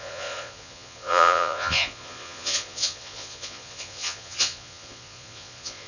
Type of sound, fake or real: fake